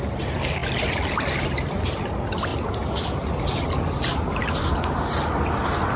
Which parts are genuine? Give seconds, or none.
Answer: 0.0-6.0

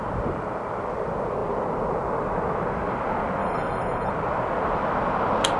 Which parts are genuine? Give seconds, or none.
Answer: 0.0-3.4; 4.1-5.6

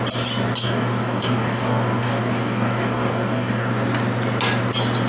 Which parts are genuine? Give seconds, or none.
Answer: 0.0-0.6; 3.7-5.1

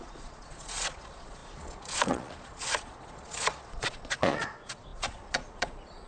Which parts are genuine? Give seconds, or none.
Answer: none

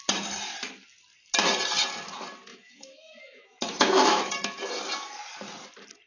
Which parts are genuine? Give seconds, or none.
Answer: 0.0-2.5; 4.3-6.1

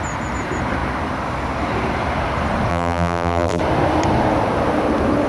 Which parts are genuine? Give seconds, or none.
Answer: 0.0-2.7; 3.6-5.3